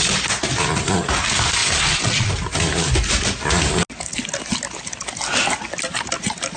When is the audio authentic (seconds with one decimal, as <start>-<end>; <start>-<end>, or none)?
0.0-1.6; 2.3-6.6